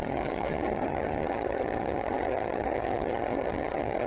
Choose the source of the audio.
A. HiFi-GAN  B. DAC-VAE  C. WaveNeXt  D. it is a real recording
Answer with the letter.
A